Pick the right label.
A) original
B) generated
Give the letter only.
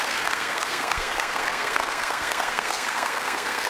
B